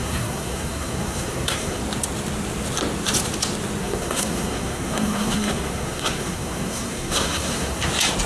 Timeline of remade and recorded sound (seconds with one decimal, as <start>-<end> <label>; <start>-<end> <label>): 0.0-1.8 remade; 1.8-3.8 recorded; 3.8-7.9 remade; 7.9-8.3 recorded